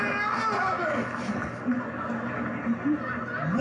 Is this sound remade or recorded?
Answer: recorded